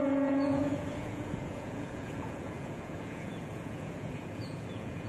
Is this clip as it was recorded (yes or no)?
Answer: no